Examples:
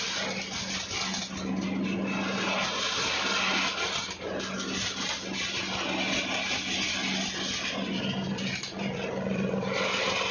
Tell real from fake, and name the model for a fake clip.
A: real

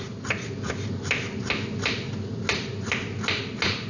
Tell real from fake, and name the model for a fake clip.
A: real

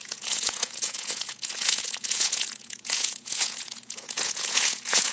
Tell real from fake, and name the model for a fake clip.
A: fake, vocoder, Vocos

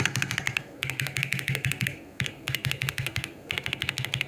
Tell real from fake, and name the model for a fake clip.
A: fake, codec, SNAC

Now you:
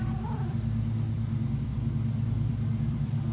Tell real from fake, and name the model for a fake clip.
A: fake, vocoder, BigVGAN v2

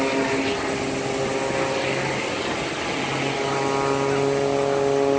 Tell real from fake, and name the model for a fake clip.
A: real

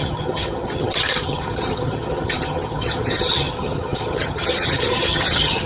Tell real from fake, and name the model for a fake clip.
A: fake, vocoder, HiFi-GAN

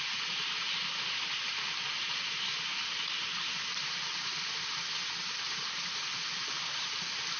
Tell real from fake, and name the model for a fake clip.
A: real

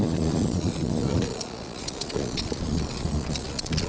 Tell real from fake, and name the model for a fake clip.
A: fake, vocoder, Vocos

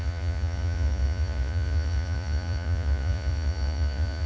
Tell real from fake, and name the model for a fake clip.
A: fake, vocoder, Vocos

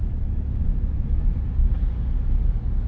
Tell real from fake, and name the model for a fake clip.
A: real